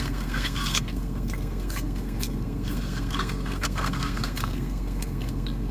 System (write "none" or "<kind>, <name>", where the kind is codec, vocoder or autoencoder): codec, SNAC